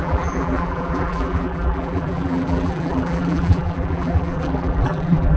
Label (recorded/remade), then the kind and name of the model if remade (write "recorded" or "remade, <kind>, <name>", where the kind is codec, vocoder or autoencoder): remade, vocoder, BigVGAN v2